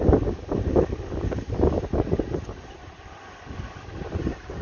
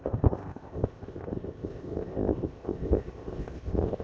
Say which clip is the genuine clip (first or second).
first